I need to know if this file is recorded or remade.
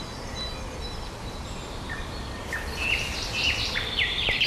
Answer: recorded